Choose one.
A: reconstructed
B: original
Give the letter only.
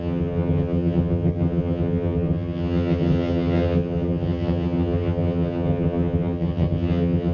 A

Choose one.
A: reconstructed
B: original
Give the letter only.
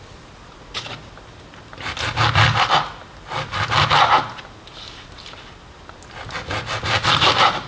B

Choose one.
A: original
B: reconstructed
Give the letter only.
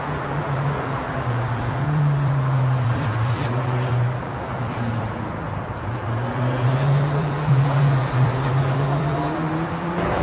B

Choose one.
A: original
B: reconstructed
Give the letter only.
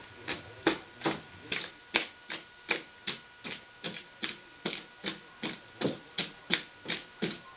A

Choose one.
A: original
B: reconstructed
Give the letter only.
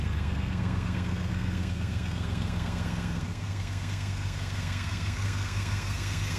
B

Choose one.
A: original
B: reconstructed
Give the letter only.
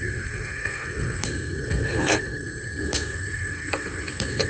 B